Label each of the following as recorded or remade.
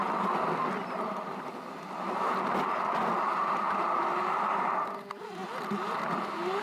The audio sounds recorded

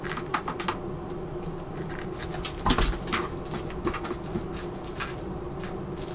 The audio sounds recorded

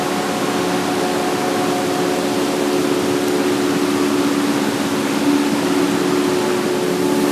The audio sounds recorded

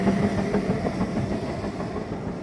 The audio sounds recorded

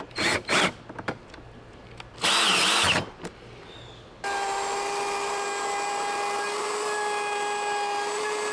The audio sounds recorded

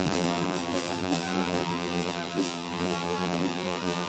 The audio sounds remade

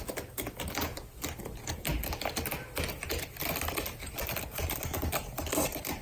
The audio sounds recorded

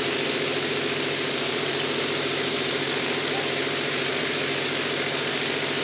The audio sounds remade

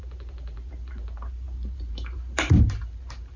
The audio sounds remade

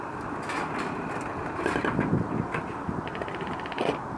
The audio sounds recorded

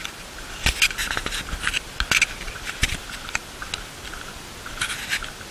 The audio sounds recorded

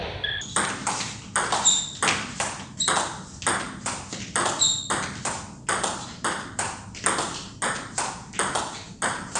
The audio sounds recorded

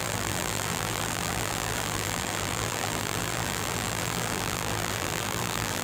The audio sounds remade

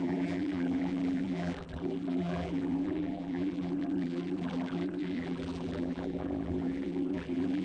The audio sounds remade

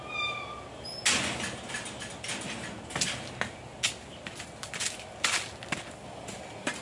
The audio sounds recorded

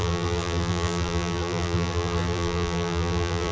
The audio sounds remade